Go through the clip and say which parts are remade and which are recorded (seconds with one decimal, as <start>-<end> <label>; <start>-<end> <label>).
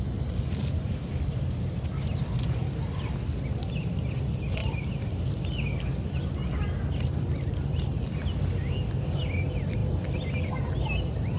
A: 0.0-11.4 recorded